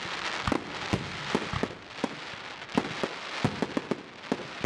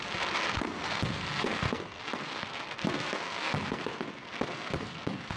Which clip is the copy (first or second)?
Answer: second